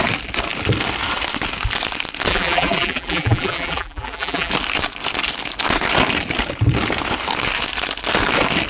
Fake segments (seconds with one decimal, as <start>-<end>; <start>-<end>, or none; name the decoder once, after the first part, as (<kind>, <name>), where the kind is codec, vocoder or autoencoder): 2.3-4.5 (vocoder, BigVGAN v2)